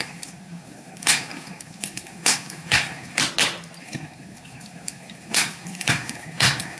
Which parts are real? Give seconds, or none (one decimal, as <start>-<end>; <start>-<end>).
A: 3.2-3.8